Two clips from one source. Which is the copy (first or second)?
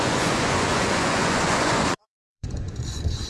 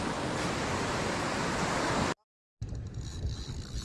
first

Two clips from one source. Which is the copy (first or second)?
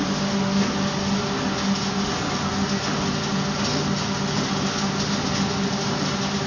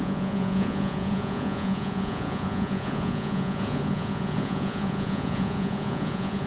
second